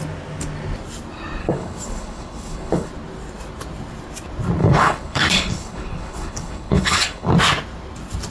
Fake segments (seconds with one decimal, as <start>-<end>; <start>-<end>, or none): 1.4-2.9; 4.6-7.3